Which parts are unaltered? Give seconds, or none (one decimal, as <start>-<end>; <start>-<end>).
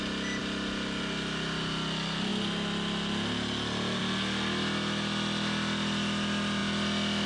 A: 0.0-7.3